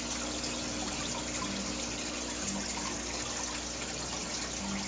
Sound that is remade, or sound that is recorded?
recorded